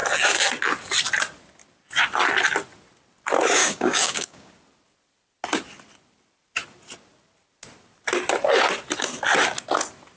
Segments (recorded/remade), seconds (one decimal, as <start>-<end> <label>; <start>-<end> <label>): 0.0-3.6 recorded; 3.6-4.5 remade; 4.5-10.2 recorded